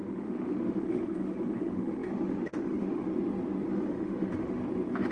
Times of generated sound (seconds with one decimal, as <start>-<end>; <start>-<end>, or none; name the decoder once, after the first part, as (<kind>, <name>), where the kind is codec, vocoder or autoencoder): 0.0-3.1 (autoencoder, DAC-VAE); 3.7-4.6